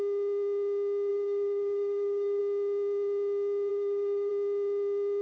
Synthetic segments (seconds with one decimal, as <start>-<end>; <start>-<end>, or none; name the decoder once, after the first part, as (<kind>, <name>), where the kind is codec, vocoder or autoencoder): 1.1-2.4 (codec, DAC); 3.7-4.3